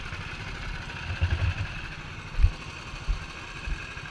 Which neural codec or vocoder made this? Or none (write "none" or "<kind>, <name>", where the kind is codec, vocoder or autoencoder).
none